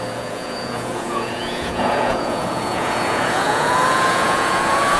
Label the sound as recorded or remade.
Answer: remade